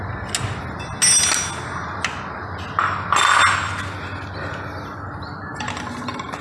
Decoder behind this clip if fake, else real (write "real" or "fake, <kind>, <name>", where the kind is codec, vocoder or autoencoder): real